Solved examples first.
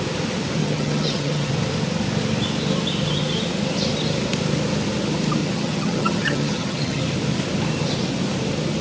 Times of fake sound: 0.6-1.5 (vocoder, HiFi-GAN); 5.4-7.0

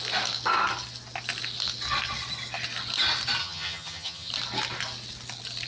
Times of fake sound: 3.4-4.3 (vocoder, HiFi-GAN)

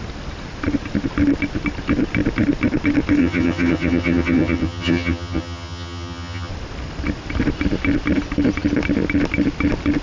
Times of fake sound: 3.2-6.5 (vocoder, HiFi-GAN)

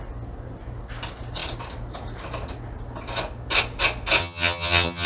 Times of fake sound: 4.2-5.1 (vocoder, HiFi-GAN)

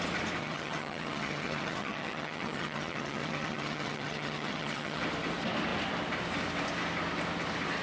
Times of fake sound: 0.4-5.0 (vocoder, HiFi-GAN)

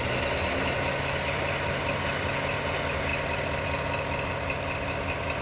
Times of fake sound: none

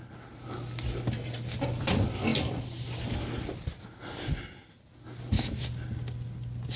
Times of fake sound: none